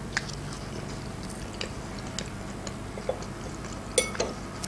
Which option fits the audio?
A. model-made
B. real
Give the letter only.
B